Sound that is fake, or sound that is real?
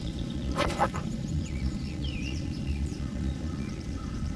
fake